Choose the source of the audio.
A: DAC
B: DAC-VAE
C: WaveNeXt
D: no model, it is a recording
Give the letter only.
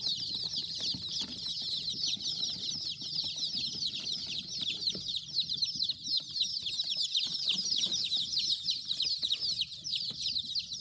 D